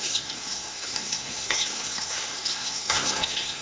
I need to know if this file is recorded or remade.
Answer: remade